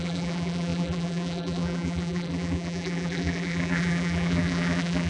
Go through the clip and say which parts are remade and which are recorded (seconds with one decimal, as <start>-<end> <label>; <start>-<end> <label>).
0.0-5.1 remade